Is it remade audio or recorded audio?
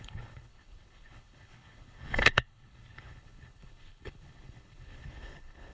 remade